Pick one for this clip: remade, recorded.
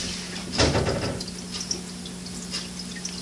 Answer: recorded